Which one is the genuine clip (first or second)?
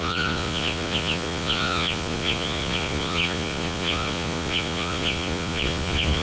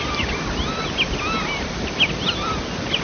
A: second